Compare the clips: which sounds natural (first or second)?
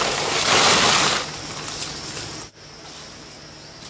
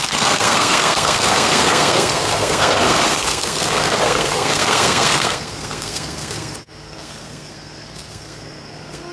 first